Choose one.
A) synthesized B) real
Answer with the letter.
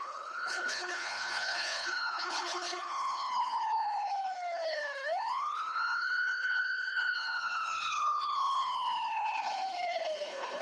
A